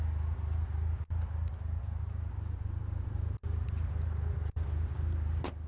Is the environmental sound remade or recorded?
recorded